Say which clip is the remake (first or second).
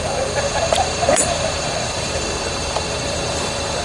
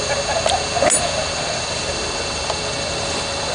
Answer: first